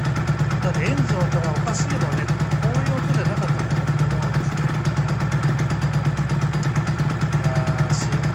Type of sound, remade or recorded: recorded